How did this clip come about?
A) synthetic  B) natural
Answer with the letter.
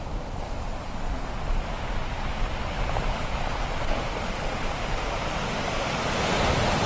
B